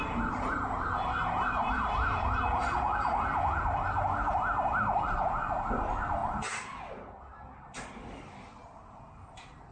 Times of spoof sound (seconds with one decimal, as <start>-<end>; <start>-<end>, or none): none